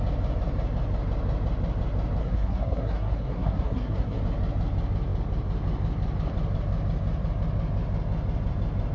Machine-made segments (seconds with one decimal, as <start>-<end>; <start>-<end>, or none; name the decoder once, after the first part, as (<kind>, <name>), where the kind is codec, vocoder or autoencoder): 2.2-4.2 (codec, SNAC)